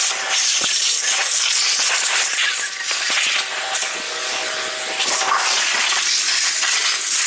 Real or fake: real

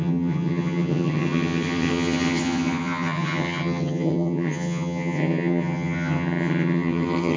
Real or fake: fake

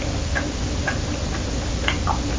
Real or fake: real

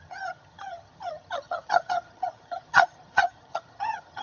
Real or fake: fake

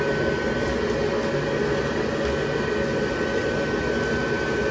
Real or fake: real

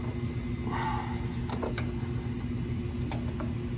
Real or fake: real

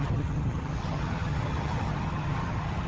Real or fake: fake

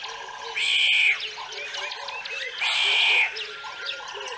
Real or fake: real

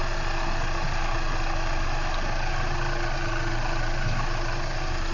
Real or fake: real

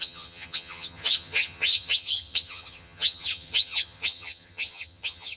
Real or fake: fake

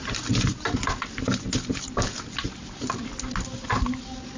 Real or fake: real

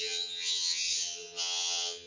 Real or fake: fake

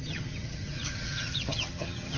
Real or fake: fake